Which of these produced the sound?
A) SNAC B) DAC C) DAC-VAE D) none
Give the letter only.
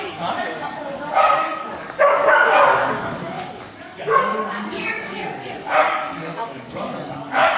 B